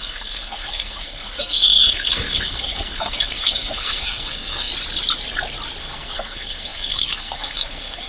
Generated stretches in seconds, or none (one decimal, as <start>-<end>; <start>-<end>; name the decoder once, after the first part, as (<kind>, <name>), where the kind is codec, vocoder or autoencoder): 0.0-4.7 (codec, SNAC); 5.8-8.1

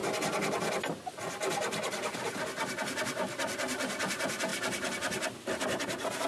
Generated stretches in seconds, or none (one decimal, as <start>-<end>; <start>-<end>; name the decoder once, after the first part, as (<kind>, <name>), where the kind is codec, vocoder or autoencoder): none

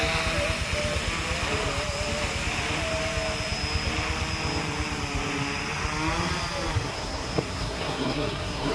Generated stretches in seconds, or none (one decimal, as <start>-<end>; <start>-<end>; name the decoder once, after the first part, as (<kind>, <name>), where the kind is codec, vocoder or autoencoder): 6.9-8.7 (codec, SNAC)

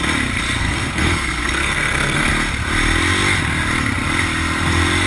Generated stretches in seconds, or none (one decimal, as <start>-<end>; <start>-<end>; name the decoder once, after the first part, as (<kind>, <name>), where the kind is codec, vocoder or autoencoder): 0.6-2.3 (codec, SNAC)

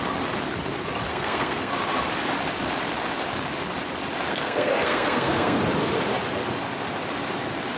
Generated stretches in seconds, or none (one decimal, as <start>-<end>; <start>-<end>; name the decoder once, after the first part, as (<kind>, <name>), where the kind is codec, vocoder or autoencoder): 1.1-1.7 (codec, SNAC); 4.3-5.6

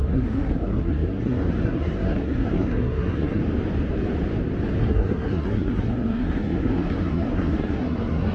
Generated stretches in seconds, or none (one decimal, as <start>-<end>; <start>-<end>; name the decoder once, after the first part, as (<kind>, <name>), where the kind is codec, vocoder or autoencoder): 0.0-3.4 (codec, SNAC); 4.8-8.3